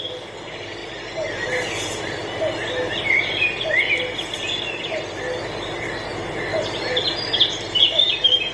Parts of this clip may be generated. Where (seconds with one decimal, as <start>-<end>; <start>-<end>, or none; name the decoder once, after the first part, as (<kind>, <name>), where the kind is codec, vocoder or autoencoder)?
none